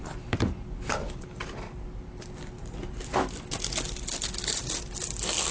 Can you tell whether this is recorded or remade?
recorded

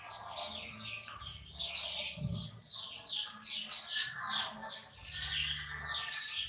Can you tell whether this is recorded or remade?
recorded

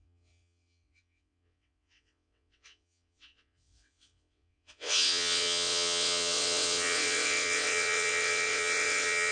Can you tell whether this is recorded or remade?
remade